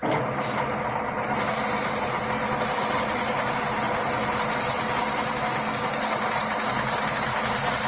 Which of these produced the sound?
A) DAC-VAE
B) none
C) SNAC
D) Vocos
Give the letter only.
B